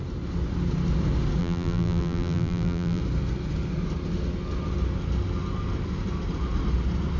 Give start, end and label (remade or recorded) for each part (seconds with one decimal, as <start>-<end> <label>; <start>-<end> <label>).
0.0-1.4 recorded; 1.4-3.0 remade; 3.0-7.2 recorded

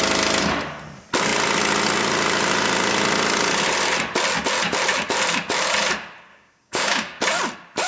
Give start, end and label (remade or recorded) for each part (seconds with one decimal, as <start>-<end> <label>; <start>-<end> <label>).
0.0-6.3 recorded; 6.3-7.2 remade; 7.2-7.9 recorded

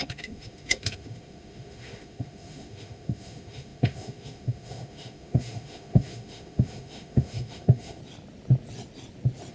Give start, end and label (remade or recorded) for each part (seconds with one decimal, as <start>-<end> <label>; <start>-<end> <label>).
0.0-8.0 remade; 8.0-9.5 recorded

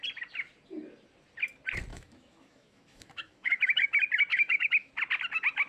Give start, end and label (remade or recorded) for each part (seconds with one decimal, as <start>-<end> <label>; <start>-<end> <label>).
0.0-1.9 recorded; 1.9-3.8 remade; 3.8-4.3 recorded; 4.3-4.9 remade; 4.9-5.7 recorded

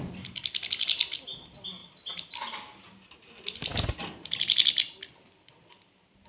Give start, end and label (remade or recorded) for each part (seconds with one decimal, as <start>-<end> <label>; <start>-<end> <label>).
0.0-6.3 recorded

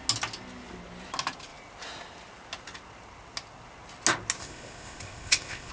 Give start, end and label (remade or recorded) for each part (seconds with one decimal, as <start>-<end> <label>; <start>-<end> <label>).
0.0-4.4 recorded; 4.4-5.7 remade